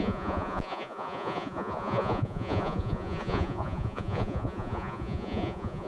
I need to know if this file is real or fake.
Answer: fake